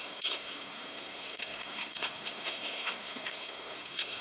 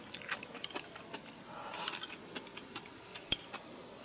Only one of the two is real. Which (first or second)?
second